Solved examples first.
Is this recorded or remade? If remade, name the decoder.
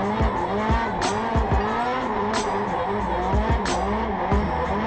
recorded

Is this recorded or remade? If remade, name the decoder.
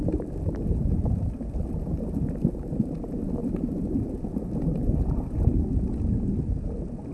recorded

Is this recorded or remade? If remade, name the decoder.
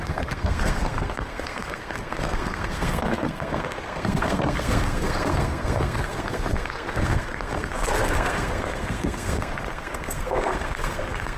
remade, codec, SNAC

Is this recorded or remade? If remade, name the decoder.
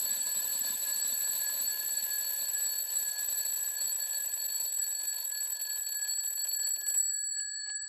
remade, vocoder, Vocos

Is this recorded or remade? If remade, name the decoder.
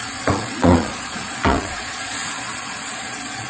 remade, vocoder, Vocos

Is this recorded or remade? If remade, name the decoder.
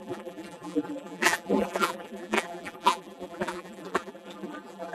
remade, vocoder, BigVGAN v2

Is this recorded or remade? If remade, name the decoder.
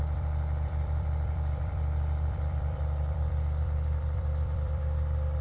remade, vocoder, BigVGAN v2